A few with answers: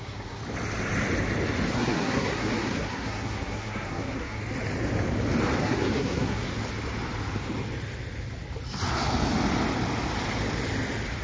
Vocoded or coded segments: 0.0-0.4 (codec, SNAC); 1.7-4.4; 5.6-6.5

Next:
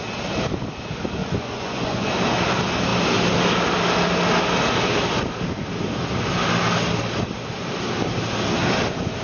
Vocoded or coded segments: 1.2-2.1 (vocoder, Vocos)

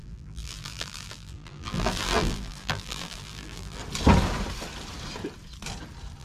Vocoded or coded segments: 0.0-3.8 (vocoder, BigVGAN v2)

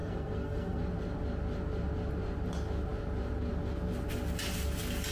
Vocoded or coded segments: 0.0-0.8 (codec, SNAC)

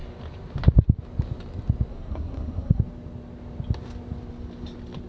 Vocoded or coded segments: 1.9-2.8 (codec, SNAC)

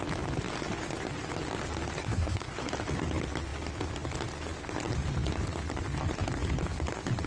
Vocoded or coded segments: 2.0-2.6 (codec, SNAC)

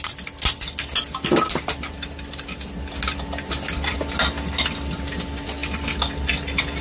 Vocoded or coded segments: none

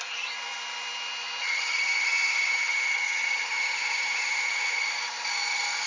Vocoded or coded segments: 1.4-4.9 (vocoder, HiFi-GAN)